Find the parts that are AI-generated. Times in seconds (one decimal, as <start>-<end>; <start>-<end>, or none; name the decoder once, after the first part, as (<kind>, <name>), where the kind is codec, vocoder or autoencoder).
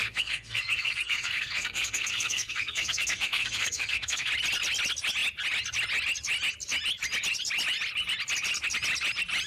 0.0-4.3 (codec, SNAC)